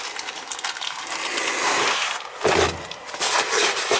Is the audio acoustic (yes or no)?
yes